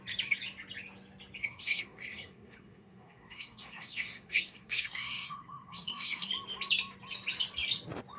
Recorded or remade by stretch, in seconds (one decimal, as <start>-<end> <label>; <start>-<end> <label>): 0.0-1.4 recorded; 1.4-6.3 remade; 6.3-8.2 recorded